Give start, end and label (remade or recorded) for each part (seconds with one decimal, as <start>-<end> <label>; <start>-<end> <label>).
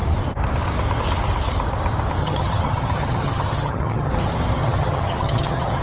0.0-2.2 recorded; 2.2-4.1 remade; 4.1-4.6 recorded; 4.6-5.8 remade